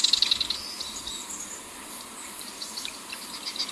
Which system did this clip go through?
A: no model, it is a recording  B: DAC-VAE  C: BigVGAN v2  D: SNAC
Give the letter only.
A